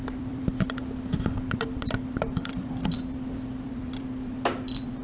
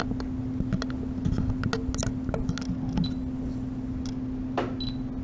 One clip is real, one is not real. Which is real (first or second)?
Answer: second